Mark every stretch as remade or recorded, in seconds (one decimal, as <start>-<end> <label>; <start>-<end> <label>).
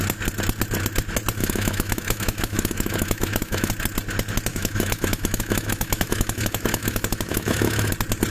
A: 0.0-1.4 recorded; 1.4-3.7 remade; 3.7-4.5 recorded; 4.5-7.9 remade; 7.9-8.3 recorded